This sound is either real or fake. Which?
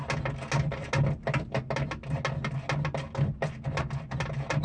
real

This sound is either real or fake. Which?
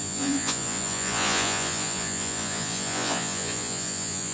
fake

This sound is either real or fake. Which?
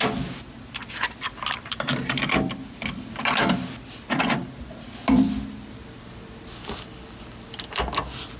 real